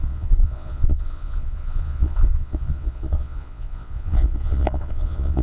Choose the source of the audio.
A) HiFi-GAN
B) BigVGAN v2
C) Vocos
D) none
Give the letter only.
C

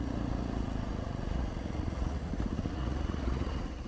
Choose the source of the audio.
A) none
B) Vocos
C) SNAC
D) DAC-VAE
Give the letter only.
B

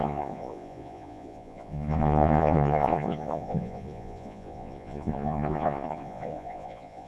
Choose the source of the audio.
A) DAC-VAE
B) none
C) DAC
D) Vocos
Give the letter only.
D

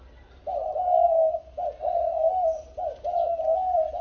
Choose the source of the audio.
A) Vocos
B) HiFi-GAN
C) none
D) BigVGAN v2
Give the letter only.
C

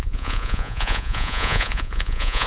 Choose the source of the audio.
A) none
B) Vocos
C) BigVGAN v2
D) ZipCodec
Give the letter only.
B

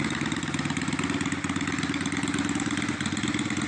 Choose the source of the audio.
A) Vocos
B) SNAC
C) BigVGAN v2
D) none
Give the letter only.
D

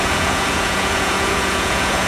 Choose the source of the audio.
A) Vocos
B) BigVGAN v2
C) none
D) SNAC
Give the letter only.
A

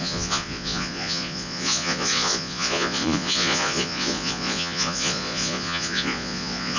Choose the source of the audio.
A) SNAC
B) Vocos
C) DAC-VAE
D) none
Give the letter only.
B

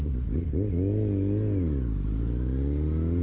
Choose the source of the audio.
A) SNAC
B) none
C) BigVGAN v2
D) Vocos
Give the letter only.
B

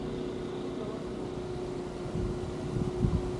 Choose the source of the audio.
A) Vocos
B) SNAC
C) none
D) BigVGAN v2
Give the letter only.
C